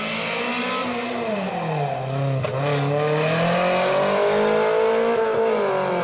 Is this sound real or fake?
real